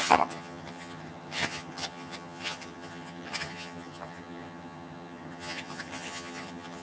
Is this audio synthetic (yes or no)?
yes